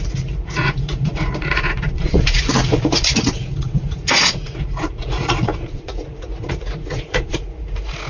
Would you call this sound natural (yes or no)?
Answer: no